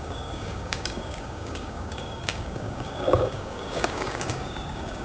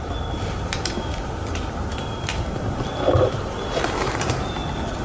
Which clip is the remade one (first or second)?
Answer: first